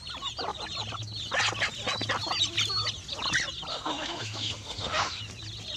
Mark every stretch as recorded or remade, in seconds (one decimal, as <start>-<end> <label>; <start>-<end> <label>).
0.0-3.7 recorded; 3.7-5.2 remade; 5.2-5.8 recorded